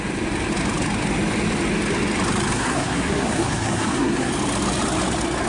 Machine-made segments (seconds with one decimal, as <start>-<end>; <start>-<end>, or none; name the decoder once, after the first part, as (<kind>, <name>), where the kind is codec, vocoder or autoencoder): 2.5-4.3 (codec, SNAC)